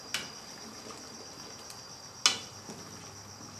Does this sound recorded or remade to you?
recorded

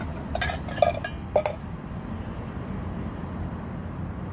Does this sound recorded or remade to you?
recorded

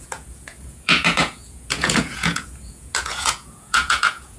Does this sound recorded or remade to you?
remade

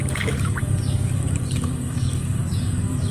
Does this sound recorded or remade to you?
remade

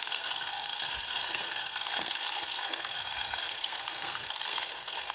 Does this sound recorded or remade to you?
remade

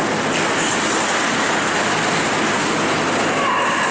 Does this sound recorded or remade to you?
recorded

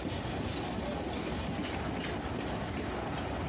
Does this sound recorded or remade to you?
recorded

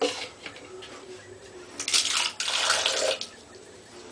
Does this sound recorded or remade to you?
recorded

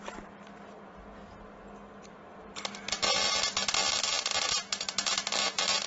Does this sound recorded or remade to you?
recorded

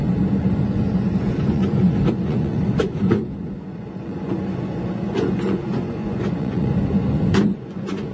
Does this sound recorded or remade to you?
remade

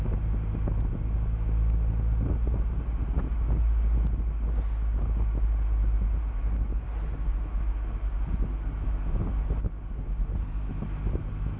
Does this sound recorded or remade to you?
recorded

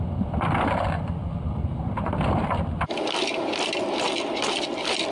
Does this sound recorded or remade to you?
remade